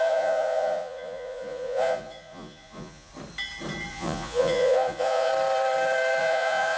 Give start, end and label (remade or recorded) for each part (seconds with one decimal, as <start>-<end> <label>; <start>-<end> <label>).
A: 0.0-3.1 remade; 3.1-3.9 recorded; 3.9-5.3 remade; 5.3-6.2 recorded; 6.2-6.8 remade